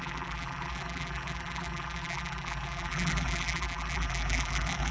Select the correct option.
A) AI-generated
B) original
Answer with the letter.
A